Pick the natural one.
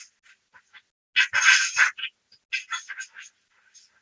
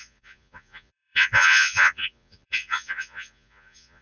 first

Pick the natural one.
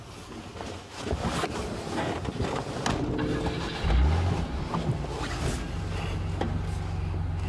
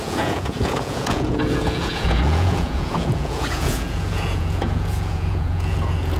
first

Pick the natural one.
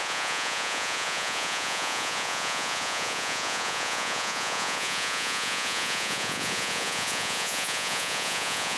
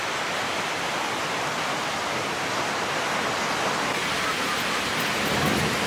second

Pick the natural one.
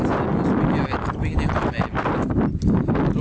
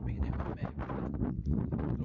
first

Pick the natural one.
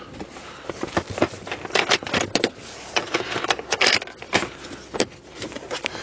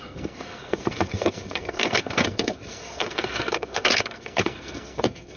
first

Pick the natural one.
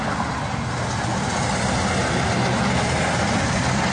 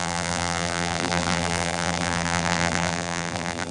first